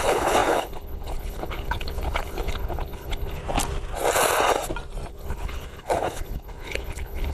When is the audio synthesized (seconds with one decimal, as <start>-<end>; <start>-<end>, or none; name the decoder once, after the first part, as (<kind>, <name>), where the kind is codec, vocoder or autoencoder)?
0.0-3.4 (codec, HILCodec); 5.1-7.3